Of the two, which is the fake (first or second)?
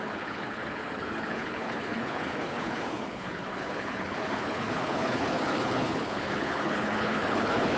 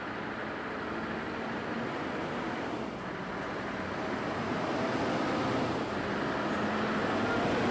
first